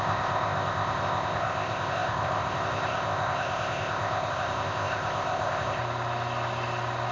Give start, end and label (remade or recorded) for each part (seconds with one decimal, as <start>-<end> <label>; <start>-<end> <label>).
0.0-5.8 remade; 5.8-7.1 recorded